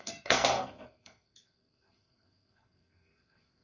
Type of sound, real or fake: fake